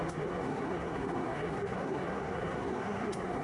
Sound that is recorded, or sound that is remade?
remade